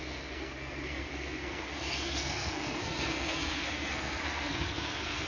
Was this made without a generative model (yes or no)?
no